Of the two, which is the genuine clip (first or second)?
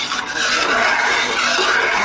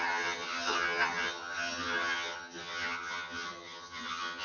first